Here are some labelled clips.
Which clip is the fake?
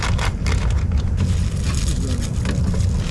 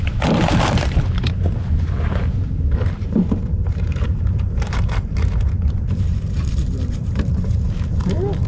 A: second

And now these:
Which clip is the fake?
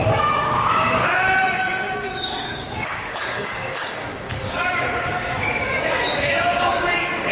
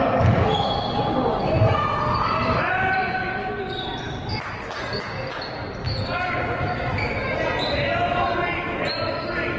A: first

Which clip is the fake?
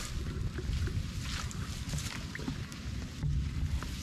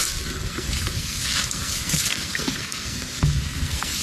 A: second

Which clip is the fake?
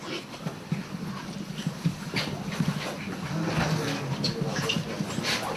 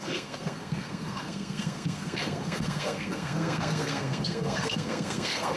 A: second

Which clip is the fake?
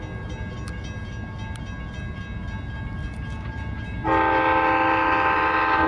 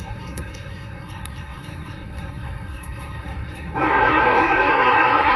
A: second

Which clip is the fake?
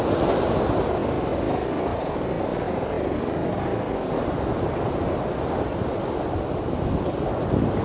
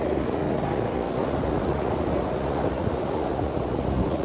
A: second